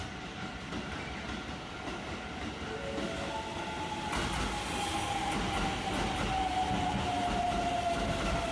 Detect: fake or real real